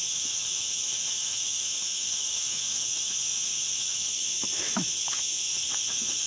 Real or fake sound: fake